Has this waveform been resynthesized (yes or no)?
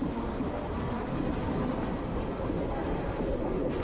no